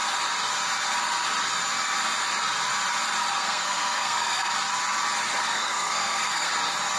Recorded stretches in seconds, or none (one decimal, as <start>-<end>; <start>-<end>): 0.0-3.4; 4.5-5.4; 6.5-7.0